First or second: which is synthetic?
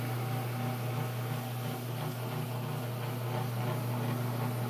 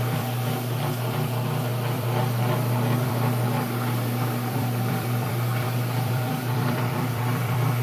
second